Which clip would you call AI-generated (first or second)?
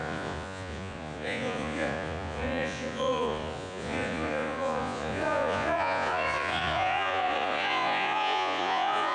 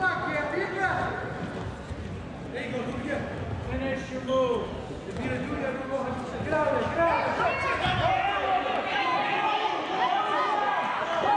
first